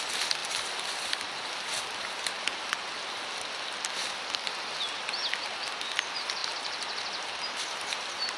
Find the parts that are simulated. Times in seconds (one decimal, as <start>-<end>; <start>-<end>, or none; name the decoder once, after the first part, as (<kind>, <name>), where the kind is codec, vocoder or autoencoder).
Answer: 6.4-7.4 (vocoder, BigVGAN v2)